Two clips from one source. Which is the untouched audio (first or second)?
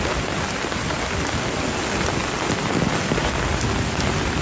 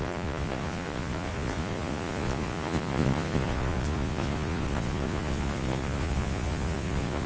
first